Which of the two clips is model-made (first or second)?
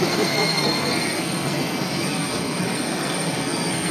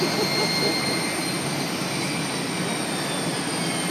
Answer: first